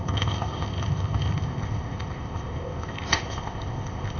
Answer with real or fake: fake